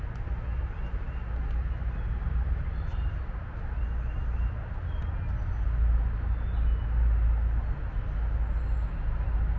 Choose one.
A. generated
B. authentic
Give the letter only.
B